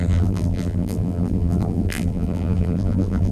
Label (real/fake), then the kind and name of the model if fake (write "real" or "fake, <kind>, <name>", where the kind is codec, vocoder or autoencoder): fake, vocoder, BigVGAN v2